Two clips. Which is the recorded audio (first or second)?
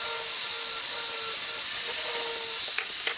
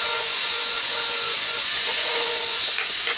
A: first